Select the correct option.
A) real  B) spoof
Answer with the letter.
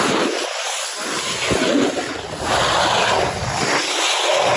A